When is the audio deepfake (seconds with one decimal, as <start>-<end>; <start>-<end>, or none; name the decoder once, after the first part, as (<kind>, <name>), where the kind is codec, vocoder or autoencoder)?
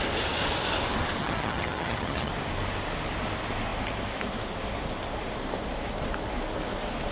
1.2-2.3 (vocoder, HiFi-GAN)